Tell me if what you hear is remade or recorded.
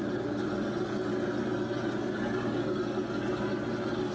recorded